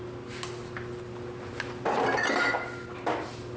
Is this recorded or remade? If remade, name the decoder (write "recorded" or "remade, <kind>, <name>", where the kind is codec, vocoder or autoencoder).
recorded